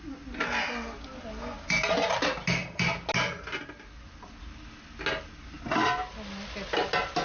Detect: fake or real real